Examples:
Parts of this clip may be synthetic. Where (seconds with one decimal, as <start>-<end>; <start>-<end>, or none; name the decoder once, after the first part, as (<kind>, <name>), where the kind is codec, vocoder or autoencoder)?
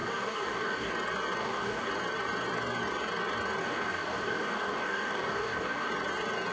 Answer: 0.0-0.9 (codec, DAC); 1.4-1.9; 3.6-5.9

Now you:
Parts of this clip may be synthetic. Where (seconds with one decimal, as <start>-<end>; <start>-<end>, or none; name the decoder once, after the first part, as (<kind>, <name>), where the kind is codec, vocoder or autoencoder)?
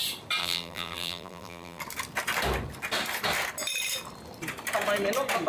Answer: 0.4-1.8 (vocoder, BigVGAN v2)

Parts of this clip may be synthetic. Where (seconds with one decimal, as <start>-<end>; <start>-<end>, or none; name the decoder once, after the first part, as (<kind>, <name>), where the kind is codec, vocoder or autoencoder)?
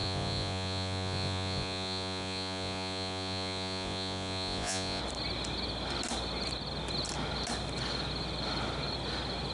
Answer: 0.0-5.0 (vocoder, Vocos)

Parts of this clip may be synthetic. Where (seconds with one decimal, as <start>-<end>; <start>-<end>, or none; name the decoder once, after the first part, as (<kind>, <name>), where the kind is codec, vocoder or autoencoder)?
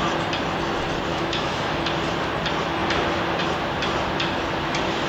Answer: 1.1-1.8 (autoencoder, DAC-VAE)